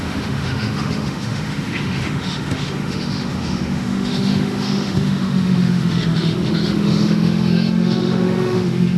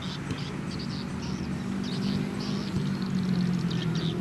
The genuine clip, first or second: second